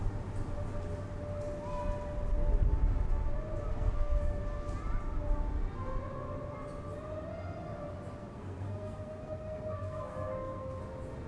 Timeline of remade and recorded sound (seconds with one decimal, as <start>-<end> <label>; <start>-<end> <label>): 0.0-3.7 recorded; 3.7-4.4 remade; 4.4-8.2 recorded; 8.2-10.8 remade; 10.8-11.3 recorded